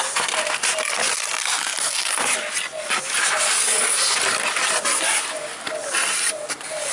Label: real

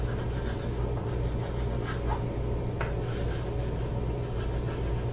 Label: real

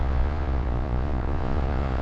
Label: fake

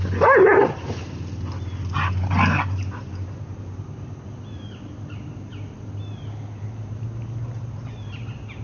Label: real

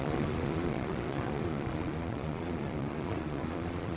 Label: fake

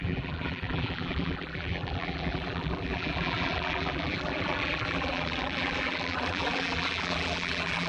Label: fake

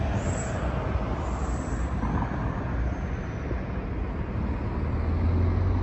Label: real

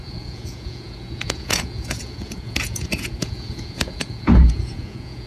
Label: fake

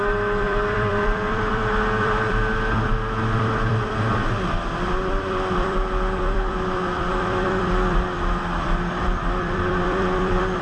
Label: fake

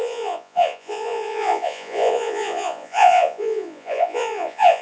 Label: fake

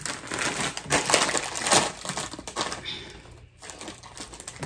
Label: real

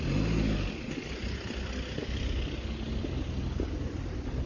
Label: real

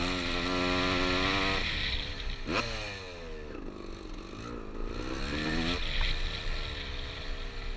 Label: real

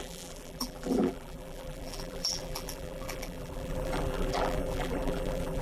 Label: fake